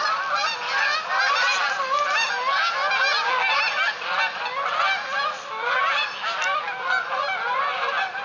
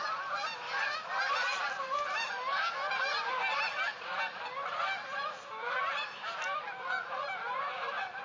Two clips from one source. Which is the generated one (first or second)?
second